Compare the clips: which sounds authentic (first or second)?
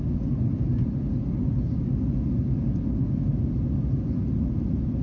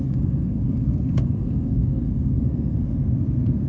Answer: first